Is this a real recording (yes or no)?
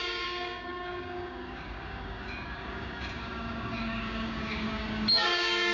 no